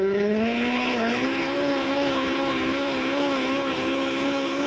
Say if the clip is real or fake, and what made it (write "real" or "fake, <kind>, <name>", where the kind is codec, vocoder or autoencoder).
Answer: fake, codec, HILCodec